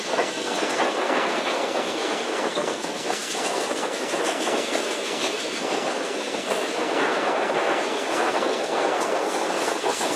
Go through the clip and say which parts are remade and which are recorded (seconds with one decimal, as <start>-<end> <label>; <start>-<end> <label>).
0.0-10.2 remade